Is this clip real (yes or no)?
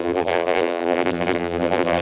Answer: no